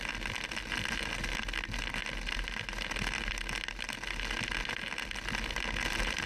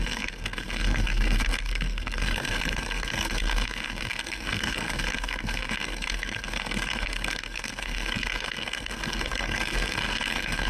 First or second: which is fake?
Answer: second